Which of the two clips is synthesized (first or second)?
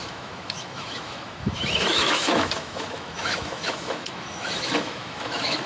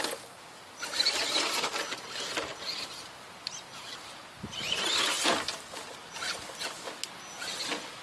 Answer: first